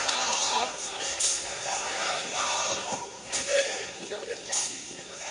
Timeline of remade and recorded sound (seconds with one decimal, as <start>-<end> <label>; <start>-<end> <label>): 0.0-5.3 remade